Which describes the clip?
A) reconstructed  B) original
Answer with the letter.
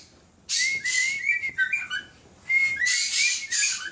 B